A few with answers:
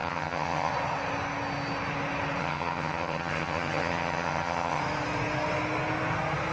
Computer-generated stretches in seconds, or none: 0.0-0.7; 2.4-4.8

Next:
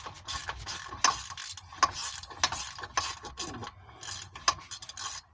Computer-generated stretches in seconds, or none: none

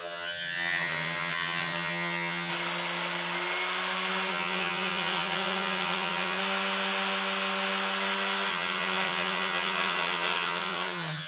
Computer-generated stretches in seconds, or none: 0.0-2.5; 4.3-6.4; 8.5-11.3

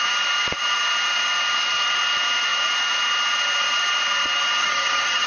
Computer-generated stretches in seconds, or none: 4.6-5.3

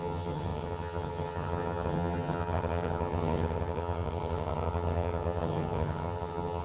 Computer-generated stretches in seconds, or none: 0.0-6.6